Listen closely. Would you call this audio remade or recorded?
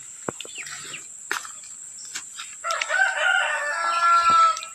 recorded